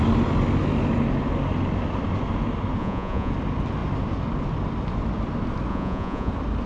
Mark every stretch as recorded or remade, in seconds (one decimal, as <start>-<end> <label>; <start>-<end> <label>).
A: 0.0-2.8 recorded; 2.8-3.3 remade; 3.3-5.7 recorded; 5.7-6.3 remade; 6.3-6.7 recorded